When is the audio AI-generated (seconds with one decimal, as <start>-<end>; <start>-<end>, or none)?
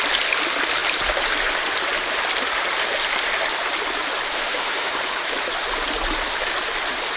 4.3-4.9